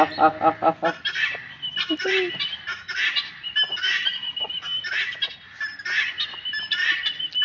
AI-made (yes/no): no